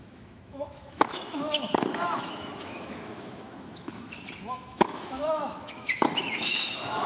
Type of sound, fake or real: fake